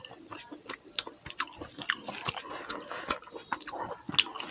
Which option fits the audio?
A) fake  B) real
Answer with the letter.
B